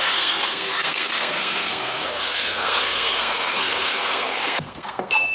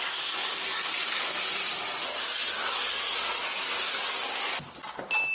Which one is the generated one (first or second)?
first